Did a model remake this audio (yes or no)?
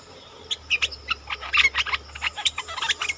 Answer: no